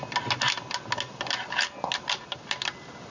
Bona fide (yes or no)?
yes